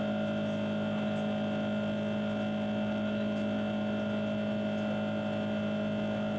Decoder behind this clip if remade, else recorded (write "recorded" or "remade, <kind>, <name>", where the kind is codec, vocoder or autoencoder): recorded